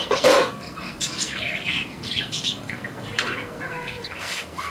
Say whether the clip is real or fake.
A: fake